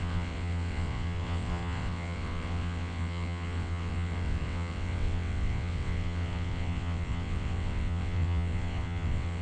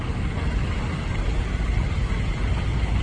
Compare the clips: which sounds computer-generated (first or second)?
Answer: first